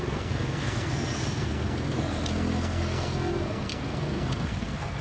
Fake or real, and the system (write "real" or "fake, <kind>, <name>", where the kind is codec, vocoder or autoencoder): fake, codec, SNAC